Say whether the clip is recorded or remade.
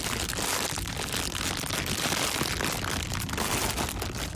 recorded